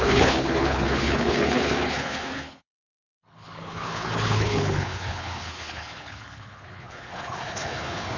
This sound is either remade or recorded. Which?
remade